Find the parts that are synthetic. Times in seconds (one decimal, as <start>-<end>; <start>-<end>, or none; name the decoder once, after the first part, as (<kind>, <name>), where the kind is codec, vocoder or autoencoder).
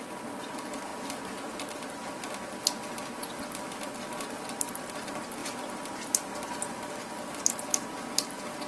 none